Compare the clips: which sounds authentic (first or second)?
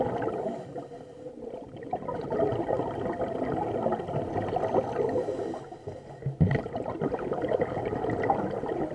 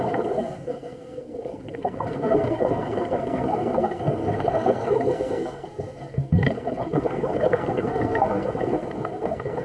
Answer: first